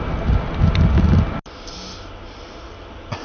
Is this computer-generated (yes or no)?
no